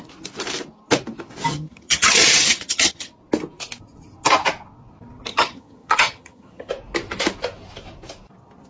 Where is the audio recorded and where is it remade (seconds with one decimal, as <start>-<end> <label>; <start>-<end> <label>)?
0.0-1.5 recorded; 1.5-3.1 remade; 3.1-5.3 recorded; 5.3-6.7 remade; 6.7-8.7 recorded